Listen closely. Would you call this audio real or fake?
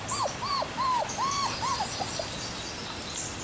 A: real